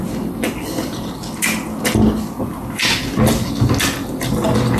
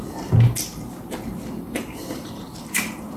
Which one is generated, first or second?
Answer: second